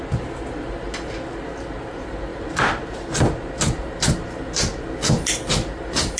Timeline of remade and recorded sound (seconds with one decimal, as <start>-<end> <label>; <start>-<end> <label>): 0.0-6.2 recorded